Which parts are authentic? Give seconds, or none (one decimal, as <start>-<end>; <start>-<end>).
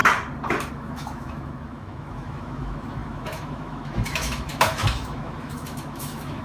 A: 0.0-0.7